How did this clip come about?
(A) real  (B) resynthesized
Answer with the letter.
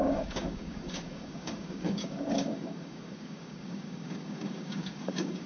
B